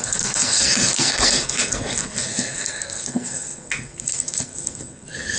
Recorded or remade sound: remade